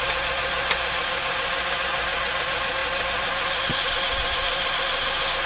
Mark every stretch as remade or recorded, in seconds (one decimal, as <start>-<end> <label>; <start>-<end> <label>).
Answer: 0.0-5.5 recorded